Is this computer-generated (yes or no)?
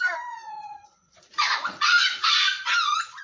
yes